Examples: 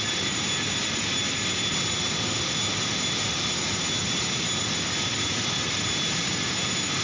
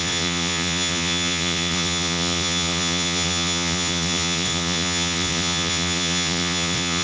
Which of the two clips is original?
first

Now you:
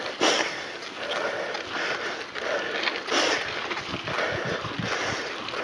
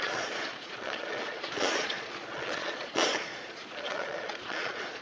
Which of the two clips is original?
first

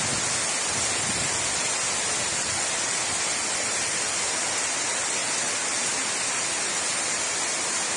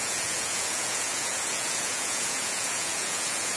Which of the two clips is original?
first